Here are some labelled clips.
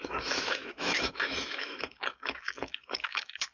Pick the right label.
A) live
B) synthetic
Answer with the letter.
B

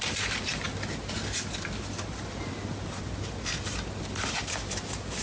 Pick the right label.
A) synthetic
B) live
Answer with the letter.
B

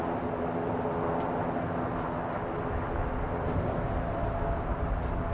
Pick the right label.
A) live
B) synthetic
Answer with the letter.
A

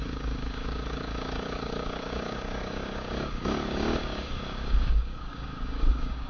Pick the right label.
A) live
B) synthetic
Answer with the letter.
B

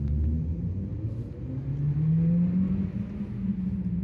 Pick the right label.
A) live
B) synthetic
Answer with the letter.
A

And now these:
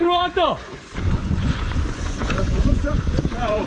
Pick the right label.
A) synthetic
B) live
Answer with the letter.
A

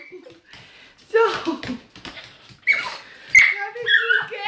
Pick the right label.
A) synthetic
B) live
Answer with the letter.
B